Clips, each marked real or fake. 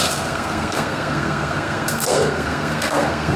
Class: fake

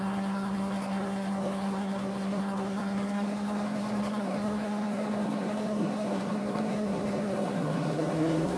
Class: fake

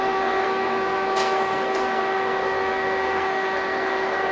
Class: fake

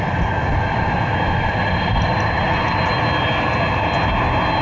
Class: real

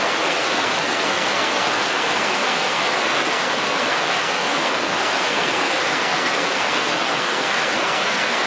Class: fake